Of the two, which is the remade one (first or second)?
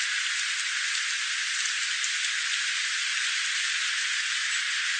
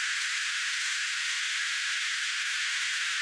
second